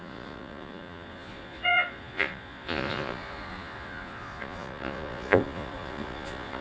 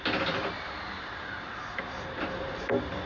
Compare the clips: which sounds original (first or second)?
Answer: second